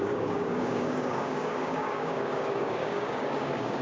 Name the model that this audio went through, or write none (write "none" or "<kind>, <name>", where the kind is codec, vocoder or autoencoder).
codec, DAC